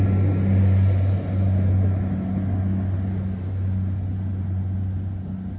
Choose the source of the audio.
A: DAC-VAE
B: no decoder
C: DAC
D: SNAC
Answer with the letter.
B